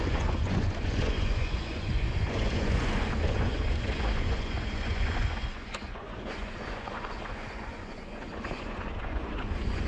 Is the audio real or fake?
fake